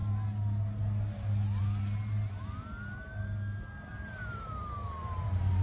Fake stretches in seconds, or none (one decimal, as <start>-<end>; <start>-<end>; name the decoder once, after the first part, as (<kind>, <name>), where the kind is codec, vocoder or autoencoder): 3.9-5.6 (vocoder, BigVGAN v2)